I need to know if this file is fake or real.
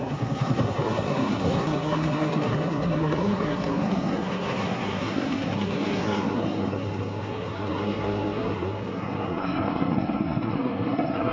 fake